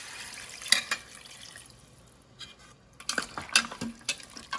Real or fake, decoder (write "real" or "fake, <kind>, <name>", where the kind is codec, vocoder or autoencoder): real